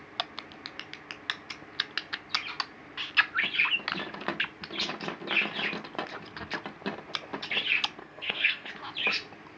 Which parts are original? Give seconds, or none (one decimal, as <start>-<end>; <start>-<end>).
0.0-8.0; 8.7-9.6